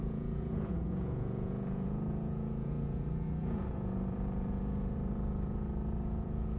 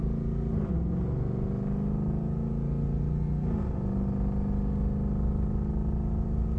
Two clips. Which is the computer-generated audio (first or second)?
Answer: first